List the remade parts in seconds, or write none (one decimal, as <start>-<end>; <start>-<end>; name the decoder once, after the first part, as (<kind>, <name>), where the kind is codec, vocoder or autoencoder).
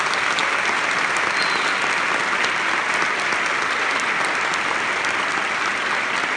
none